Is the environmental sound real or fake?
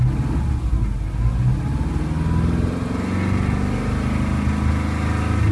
real